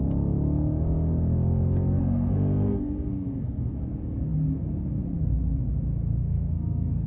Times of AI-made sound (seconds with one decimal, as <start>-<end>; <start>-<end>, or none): 2.0-3.7; 6.2-7.1